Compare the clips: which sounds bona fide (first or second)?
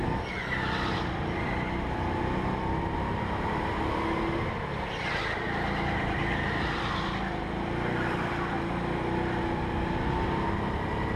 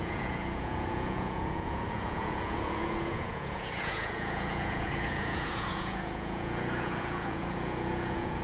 first